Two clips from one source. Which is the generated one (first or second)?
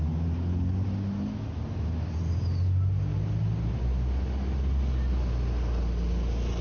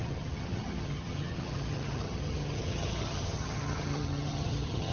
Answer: second